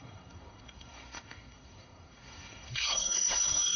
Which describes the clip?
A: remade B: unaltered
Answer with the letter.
A